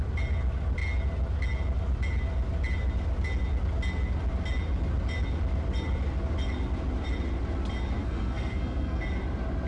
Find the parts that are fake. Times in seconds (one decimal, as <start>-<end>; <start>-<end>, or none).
8.0-9.0